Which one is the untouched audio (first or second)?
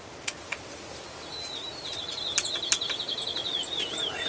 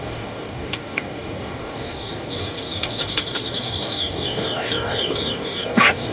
first